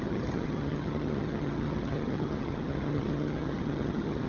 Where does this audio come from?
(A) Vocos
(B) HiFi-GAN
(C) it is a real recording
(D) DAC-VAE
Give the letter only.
B